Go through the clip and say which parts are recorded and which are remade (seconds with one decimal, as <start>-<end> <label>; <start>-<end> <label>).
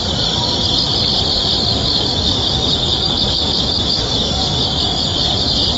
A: 0.0-1.7 recorded; 1.7-5.2 remade; 5.2-5.8 recorded